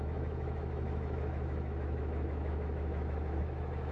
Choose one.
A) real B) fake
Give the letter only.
B